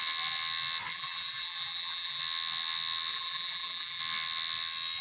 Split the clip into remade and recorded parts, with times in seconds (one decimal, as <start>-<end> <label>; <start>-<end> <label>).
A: 0.0-0.9 recorded; 0.9-2.2 remade; 2.2-3.1 recorded; 3.1-4.0 remade; 4.0-5.0 recorded